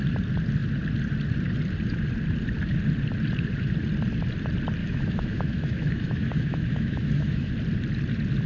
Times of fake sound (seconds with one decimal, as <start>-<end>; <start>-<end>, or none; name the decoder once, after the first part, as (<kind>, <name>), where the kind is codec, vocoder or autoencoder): 4.8-7.5 (autoencoder, DAC-VAE)